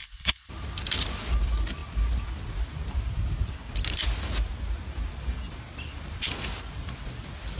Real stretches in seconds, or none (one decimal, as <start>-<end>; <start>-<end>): 0.5-7.6